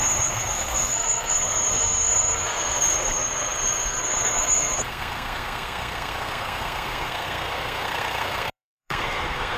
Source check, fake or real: fake